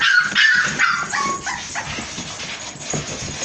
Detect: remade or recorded recorded